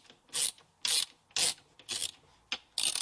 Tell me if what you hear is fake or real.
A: real